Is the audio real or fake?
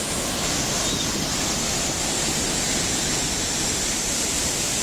real